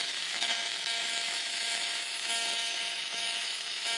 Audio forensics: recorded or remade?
remade